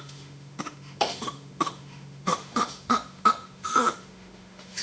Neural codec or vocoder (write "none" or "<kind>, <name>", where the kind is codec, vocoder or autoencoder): autoencoder, DAC-VAE